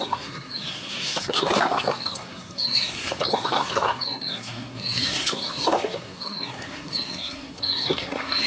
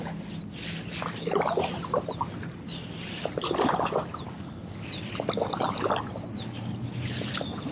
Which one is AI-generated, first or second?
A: first